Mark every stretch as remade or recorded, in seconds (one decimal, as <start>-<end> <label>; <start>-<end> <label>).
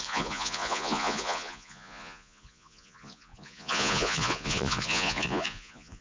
0.0-6.0 remade